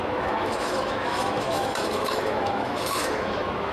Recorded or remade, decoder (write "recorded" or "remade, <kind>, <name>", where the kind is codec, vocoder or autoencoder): remade, autoencoder, DAC-VAE